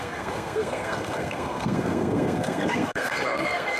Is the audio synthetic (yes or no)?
yes